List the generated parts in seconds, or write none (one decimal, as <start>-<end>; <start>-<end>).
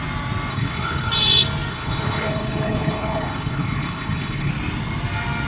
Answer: 0.5-1.1; 1.7-4.5